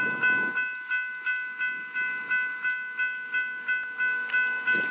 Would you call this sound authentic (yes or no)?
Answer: yes